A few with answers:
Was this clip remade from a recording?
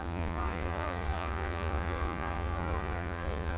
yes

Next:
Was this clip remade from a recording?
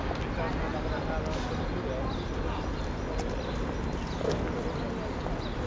no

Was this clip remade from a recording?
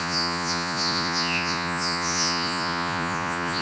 yes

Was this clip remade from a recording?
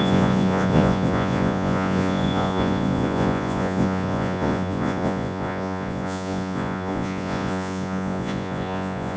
yes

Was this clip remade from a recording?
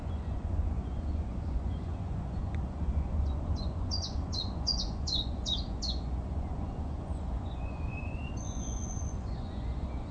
yes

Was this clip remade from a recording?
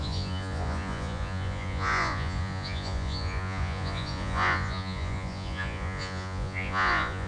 yes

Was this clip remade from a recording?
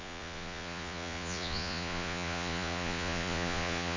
yes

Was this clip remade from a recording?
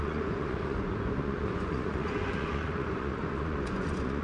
yes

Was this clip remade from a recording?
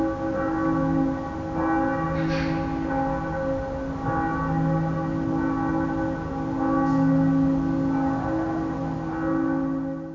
no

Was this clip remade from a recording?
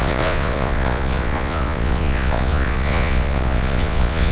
yes